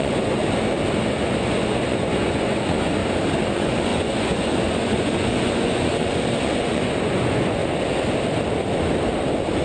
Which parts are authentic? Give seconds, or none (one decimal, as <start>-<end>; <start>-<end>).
0.4-1.1; 3.0-3.5; 7.6-9.6